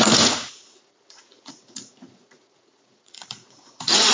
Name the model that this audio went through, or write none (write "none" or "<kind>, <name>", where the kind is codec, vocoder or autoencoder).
vocoder, Vocos